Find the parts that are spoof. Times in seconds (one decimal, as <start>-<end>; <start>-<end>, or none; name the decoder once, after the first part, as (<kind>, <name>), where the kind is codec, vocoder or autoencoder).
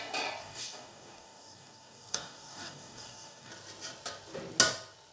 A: 0.4-3.5 (codec, DAC)